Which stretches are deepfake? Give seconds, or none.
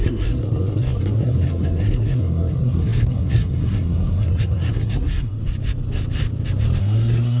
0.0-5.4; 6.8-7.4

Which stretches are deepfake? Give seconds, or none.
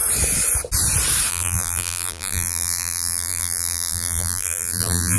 1.3-5.2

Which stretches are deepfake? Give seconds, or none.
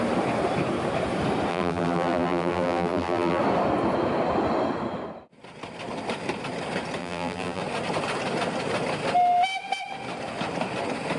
1.5-3.4; 7.0-7.6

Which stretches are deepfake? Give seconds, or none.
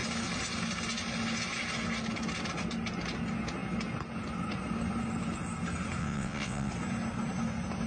6.0-6.7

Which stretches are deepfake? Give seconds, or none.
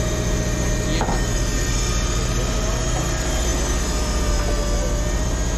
none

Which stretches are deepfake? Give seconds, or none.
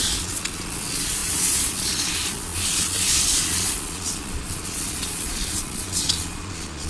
0.0-6.9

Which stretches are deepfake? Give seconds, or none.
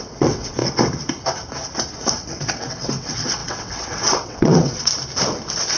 0.0-0.6; 2.4-4.9